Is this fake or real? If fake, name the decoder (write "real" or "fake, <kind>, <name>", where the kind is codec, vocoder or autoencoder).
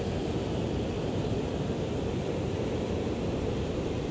real